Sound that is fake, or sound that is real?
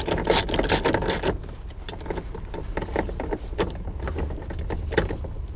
real